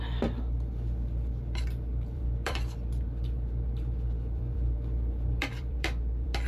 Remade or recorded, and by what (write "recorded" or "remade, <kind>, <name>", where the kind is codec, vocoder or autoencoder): remade, vocoder, BigVGAN v2